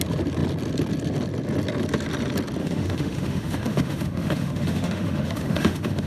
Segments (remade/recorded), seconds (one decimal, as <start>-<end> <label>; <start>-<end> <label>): 0.0-2.6 recorded; 2.6-6.1 remade